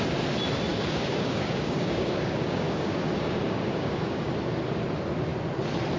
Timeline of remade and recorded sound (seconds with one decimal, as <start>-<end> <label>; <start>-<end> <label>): 0.0-0.7 recorded; 0.7-4.3 remade; 4.3-6.0 recorded